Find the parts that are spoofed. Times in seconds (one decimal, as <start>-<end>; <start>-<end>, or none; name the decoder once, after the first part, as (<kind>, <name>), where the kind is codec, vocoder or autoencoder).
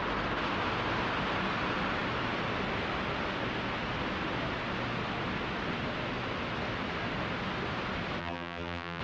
8.2-9.0 (vocoder, BigVGAN v2)